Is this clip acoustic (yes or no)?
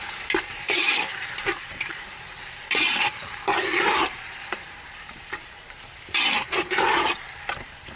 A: no